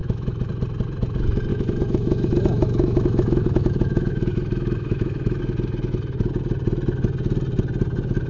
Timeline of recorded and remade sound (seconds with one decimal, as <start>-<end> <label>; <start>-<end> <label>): 0.0-0.5 remade; 0.5-1.5 recorded; 1.5-5.4 remade; 5.4-8.3 recorded